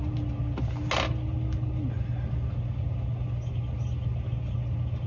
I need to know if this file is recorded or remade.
recorded